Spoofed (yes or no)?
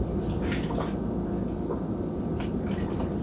no